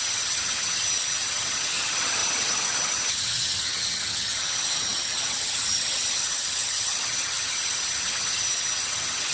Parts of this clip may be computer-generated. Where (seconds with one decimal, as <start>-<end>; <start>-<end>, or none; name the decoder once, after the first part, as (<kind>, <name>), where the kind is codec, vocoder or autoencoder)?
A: 0.0-9.3 (vocoder, HiFi-GAN)